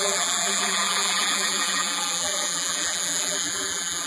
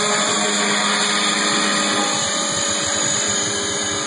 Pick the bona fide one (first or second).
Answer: second